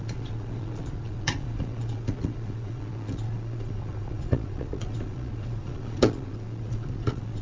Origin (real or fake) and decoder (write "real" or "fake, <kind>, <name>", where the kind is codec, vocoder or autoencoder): fake, vocoder, Vocos